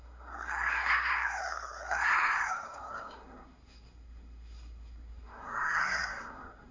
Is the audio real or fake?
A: fake